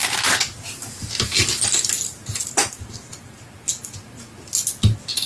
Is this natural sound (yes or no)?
yes